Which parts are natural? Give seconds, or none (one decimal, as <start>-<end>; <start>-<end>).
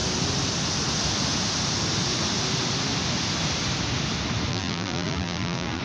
0.0-4.5